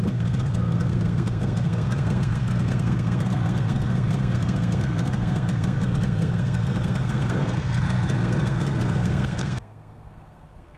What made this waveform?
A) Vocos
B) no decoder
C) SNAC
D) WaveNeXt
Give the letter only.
C